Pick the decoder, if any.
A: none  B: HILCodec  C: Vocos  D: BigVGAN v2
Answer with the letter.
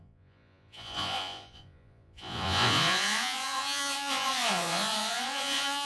C